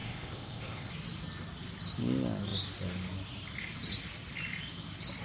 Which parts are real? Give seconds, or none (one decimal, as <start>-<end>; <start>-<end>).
0.9-5.2